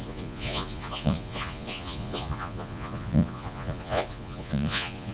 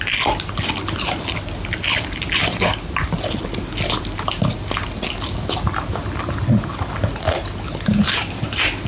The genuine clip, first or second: second